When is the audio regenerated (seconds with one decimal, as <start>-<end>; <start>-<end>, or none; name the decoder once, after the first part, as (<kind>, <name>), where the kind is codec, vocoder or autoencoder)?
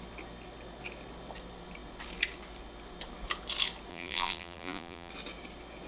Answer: 3.9-5.1 (vocoder, BigVGAN v2)